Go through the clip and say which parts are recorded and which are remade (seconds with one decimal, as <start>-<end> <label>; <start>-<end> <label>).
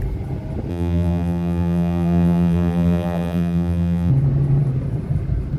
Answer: 0.0-0.7 recorded; 0.7-4.1 remade; 4.1-5.6 recorded